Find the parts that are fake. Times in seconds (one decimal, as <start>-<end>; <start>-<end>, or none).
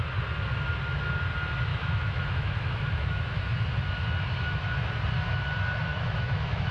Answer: 1.7-3.4; 5.9-6.7